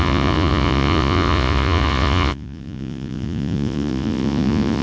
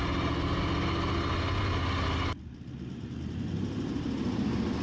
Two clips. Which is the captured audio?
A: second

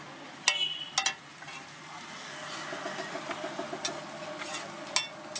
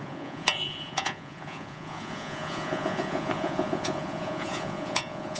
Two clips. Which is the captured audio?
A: first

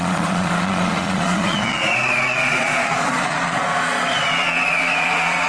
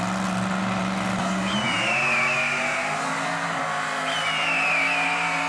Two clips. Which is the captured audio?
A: second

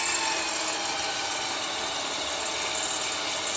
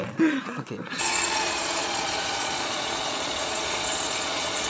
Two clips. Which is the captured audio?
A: first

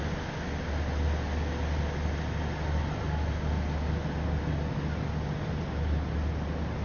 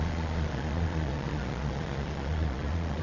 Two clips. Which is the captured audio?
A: first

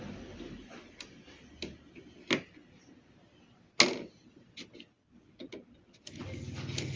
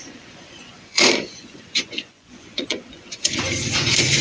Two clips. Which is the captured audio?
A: first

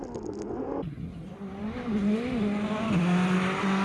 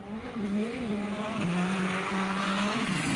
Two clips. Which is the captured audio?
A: first